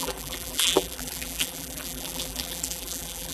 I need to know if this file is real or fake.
fake